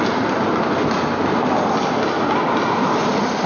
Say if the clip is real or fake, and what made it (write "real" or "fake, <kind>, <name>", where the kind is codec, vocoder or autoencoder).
real